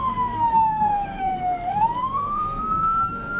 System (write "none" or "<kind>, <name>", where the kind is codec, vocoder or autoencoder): codec, SNAC